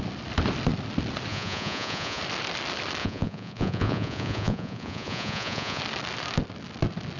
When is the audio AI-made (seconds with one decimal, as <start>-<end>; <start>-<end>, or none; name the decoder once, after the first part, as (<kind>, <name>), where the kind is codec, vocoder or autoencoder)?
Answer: 1.3-2.2 (vocoder, Vocos); 3.0-5.8